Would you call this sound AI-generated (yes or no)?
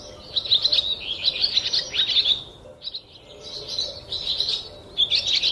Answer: no